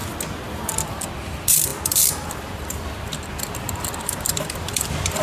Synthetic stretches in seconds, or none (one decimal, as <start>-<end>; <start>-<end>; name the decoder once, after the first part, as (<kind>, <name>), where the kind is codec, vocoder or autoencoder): 0.6-5.2 (vocoder, BigVGAN v2)